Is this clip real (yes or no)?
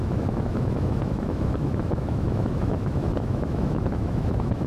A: no